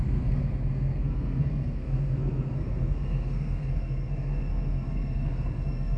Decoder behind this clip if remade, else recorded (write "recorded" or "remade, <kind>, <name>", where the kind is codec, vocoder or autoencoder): remade, codec, SNAC